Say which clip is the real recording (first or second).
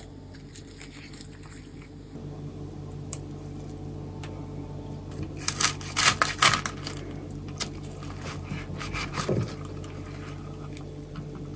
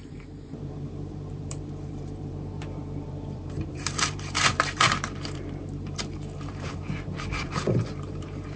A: first